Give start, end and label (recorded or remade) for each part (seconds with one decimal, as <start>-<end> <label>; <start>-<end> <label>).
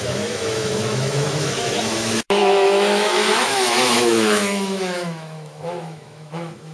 0.0-6.7 remade